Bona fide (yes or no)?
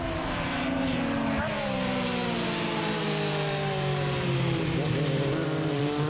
no